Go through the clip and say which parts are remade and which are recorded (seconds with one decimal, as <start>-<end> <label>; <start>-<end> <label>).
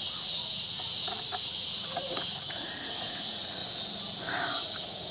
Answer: 0.0-3.6 remade; 3.6-4.6 recorded; 4.6-5.1 remade